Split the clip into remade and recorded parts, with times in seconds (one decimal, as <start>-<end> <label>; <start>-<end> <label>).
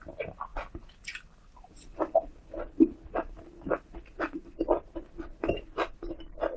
0.0-6.6 recorded